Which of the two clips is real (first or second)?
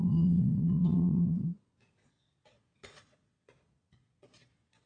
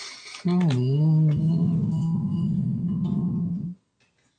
second